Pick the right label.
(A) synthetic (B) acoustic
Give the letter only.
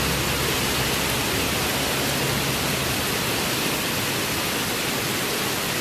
B